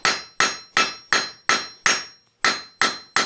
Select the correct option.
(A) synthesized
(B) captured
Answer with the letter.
B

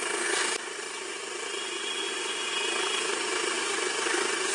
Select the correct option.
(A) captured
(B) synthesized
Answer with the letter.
B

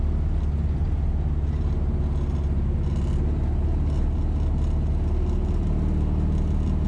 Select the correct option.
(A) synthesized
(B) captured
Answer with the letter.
B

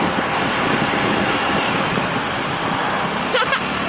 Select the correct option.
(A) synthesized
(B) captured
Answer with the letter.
B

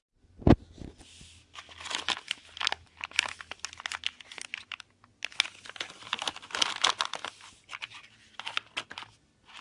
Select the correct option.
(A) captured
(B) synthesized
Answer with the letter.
A